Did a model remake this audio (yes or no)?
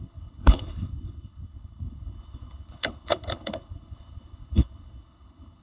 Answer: yes